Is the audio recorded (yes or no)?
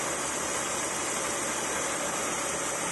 yes